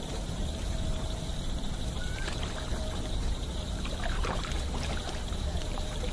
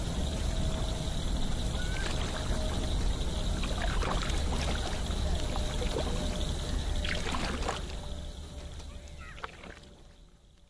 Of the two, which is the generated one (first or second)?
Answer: first